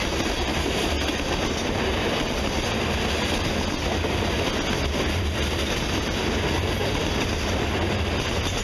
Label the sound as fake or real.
real